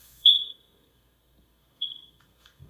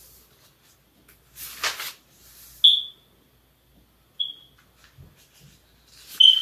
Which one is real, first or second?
second